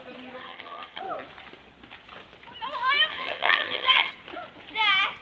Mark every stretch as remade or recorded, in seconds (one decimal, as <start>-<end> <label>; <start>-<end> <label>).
0.0-0.4 recorded; 0.4-1.0 remade; 1.0-3.1 recorded; 3.1-4.1 remade; 4.1-5.2 recorded

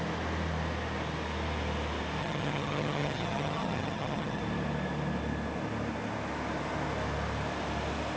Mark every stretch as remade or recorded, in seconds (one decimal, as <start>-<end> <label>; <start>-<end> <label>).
0.0-2.2 recorded; 2.2-4.4 remade; 4.4-8.2 recorded

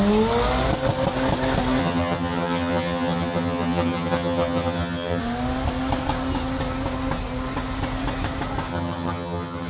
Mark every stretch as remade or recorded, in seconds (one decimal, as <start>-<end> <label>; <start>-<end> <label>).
0.0-1.8 recorded; 1.8-5.2 remade; 5.2-8.7 recorded; 8.7-9.7 remade